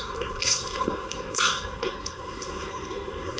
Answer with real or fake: fake